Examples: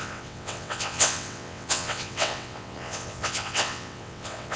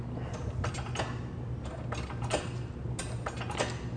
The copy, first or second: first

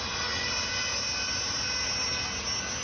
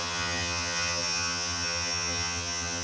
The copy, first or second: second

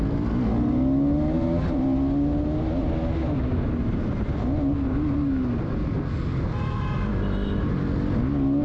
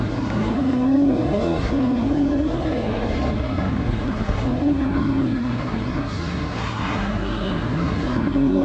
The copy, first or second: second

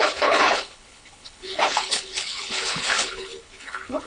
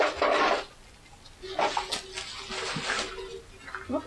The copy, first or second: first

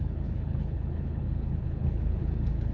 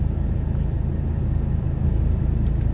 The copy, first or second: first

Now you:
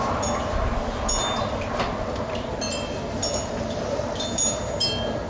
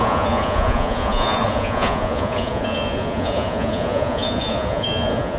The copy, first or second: second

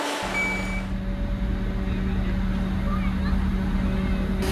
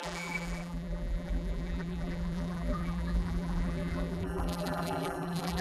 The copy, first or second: second